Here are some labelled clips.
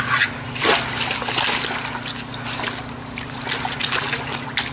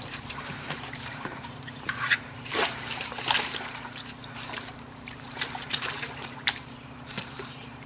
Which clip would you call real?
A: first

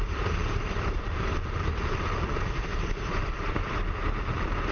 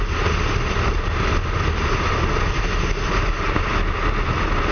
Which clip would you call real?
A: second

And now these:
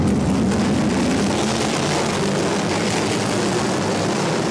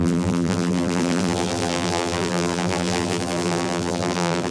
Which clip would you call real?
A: first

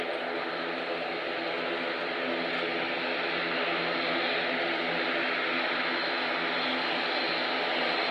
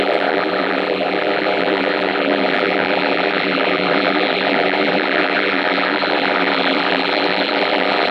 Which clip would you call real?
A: first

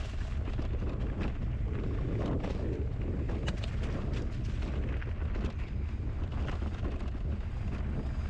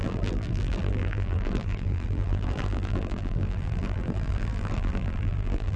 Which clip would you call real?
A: first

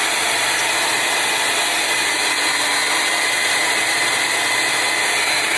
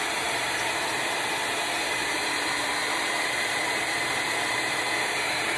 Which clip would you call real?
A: first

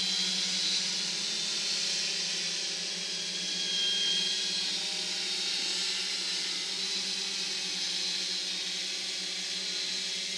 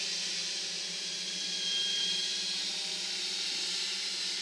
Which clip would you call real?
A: first